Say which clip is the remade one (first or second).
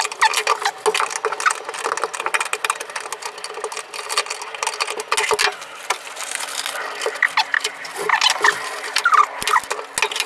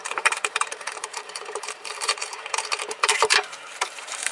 second